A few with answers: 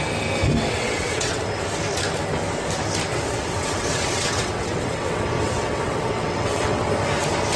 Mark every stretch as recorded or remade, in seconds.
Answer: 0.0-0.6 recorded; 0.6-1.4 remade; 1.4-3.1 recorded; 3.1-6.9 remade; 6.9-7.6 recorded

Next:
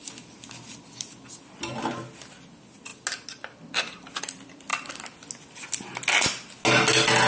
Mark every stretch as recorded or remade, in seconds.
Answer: 0.0-7.3 recorded

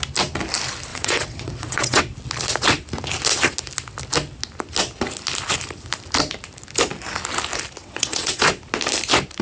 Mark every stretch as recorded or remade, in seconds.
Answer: 0.0-0.9 recorded; 0.9-2.0 remade; 2.0-7.8 recorded; 7.8-8.4 remade; 8.4-9.4 recorded